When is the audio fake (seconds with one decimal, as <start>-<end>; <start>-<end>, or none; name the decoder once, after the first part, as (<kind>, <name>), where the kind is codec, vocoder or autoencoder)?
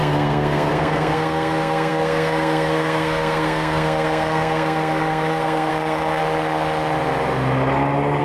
0.0-6.2 (codec, SNAC)